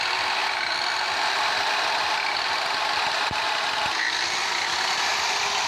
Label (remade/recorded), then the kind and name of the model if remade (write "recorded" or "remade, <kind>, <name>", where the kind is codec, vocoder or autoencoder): recorded